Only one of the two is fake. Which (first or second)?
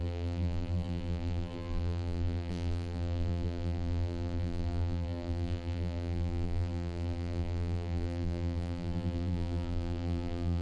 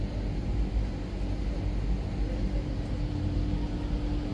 first